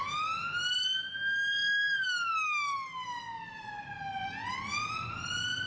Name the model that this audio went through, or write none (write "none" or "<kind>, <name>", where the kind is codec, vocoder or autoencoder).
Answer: none